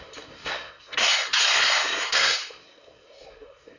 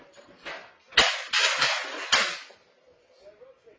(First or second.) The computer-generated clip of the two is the first